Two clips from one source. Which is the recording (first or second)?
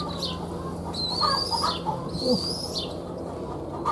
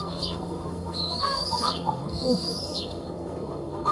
first